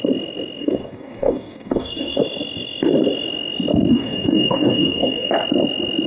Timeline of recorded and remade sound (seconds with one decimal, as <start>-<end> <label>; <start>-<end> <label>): 0.0-0.6 recorded; 0.6-2.2 remade; 2.2-3.9 recorded; 3.9-5.3 remade; 5.3-6.1 recorded

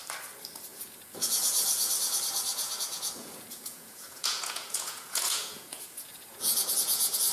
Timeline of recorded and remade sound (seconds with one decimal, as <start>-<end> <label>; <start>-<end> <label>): 0.0-0.7 recorded; 0.7-1.9 remade; 1.9-2.5 recorded; 2.5-7.3 remade